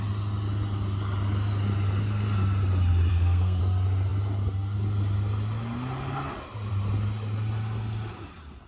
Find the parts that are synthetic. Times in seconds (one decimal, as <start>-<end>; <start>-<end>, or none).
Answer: 3.1-3.6